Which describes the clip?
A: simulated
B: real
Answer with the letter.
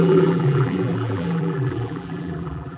A